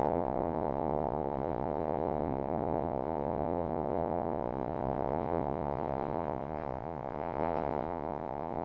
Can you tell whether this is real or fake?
fake